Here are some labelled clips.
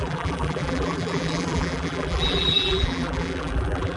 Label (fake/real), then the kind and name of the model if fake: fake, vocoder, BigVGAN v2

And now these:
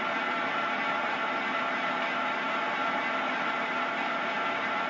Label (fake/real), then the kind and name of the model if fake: fake, vocoder, BigVGAN v2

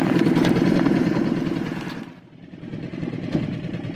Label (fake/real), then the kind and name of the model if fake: fake, vocoder, BigVGAN v2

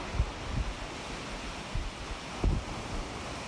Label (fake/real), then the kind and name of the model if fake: real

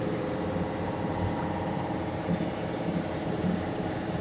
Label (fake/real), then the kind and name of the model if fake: fake, vocoder, BigVGAN v2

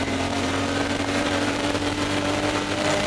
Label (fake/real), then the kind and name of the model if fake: fake, vocoder, BigVGAN v2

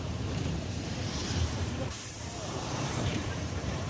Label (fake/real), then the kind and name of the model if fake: fake, vocoder, BigVGAN v2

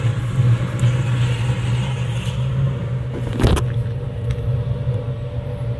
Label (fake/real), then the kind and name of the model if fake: real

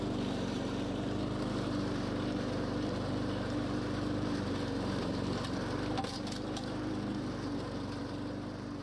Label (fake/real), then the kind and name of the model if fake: fake, vocoder, BigVGAN v2